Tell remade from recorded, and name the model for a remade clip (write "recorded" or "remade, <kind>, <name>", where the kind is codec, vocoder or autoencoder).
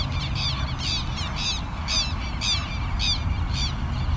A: recorded